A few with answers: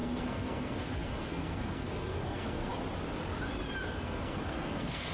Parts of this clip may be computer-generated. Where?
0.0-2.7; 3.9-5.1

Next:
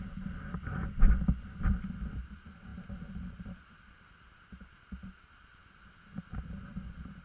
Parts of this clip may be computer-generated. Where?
none

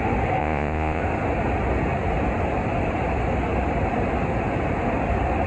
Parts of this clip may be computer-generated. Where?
0.4-1.0

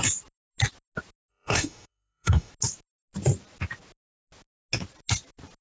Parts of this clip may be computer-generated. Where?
1.3-2.5

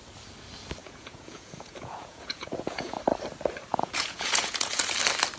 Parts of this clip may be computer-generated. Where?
0.8-3.0; 3.7-4.8